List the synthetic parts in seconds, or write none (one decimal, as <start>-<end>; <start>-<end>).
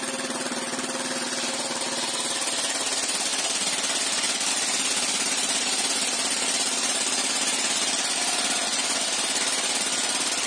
none